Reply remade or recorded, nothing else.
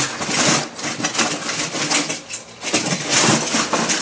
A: recorded